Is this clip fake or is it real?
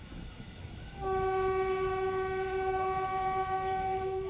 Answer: fake